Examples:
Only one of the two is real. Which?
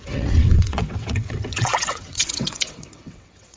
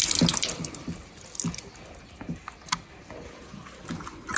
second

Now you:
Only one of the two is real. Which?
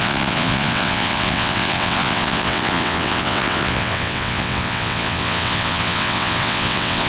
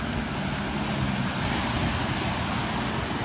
second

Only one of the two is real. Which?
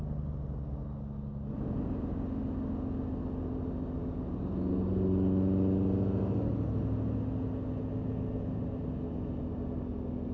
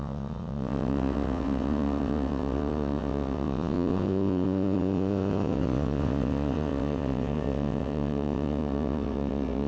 first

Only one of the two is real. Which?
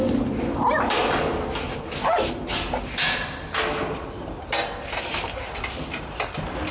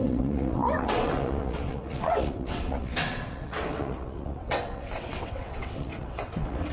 first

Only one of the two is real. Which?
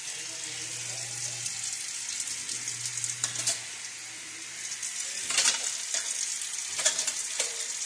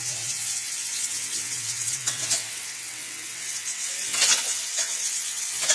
first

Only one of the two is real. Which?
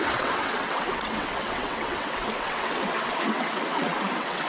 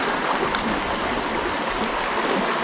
second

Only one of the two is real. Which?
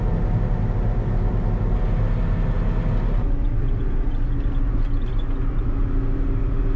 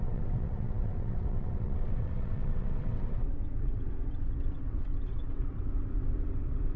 first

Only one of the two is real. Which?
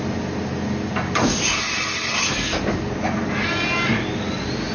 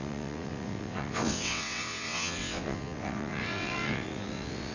first